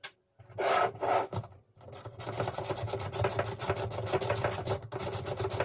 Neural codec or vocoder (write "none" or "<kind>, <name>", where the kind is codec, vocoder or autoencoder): none